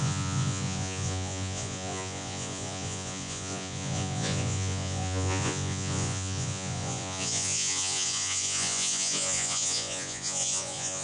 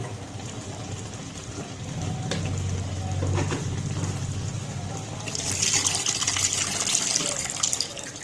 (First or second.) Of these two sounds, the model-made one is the first